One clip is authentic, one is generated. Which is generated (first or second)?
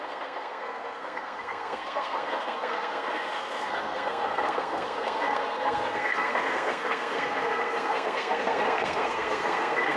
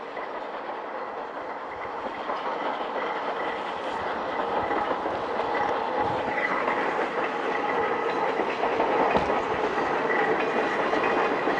first